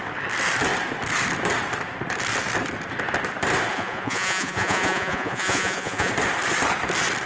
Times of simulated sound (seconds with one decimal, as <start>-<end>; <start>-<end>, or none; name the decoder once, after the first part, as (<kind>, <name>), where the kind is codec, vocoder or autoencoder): 3.7-6.1 (vocoder, Vocos)

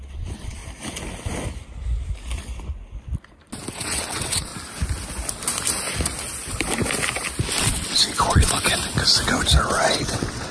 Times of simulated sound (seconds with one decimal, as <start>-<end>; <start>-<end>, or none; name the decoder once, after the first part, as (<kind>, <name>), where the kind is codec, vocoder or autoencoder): 0.0-0.6 (vocoder, WaveNeXt); 3.7-4.5; 7.6-8.7; 9.4-10.5

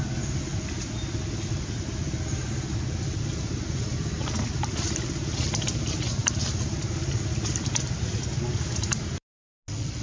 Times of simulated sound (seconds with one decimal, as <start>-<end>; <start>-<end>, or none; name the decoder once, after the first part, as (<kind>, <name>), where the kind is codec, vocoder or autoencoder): none